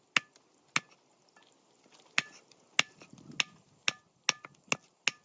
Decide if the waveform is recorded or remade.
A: recorded